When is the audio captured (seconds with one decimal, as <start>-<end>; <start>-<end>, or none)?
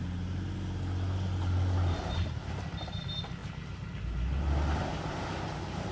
0.0-5.9